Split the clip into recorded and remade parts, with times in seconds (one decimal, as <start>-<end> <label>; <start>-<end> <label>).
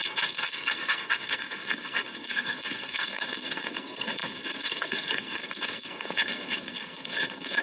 0.0-7.6 remade